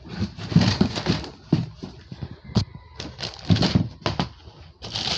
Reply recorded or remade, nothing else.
recorded